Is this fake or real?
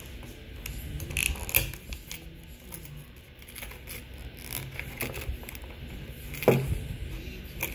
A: real